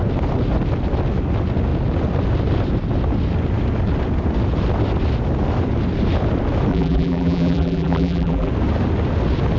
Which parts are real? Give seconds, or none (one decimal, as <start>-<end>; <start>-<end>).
0.0-6.7; 8.5-9.6

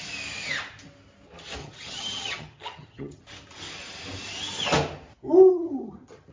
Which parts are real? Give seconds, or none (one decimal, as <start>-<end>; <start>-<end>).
0.0-1.6; 3.2-5.5

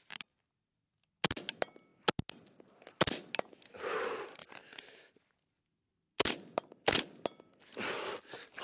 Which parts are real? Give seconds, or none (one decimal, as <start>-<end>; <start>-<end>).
0.0-8.6

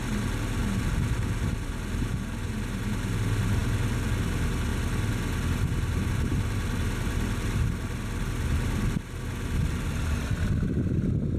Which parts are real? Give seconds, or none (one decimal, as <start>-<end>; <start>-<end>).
0.0-11.4

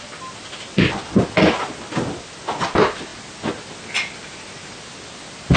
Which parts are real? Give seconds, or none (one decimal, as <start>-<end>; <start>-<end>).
0.0-5.6

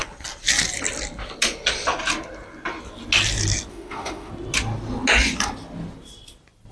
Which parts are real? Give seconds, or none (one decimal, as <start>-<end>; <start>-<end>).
0.0-3.7; 4.3-6.7